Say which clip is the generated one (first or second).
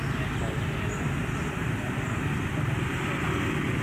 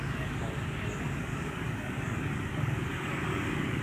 second